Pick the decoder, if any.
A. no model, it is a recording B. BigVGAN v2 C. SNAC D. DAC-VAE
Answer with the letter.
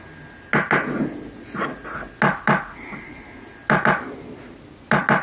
A